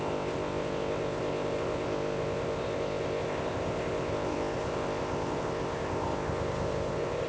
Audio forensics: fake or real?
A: fake